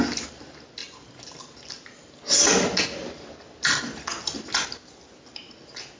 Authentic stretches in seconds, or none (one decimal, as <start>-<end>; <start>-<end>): 0.0-6.0